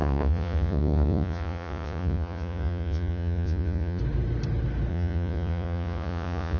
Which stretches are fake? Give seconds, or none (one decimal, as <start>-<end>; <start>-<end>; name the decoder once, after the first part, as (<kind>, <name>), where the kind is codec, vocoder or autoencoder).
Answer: 0.0-4.0 (vocoder, Vocos); 4.9-6.6